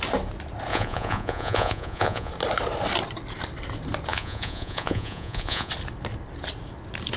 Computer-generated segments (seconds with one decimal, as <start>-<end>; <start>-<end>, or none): 0.7-2.3; 4.1-5.7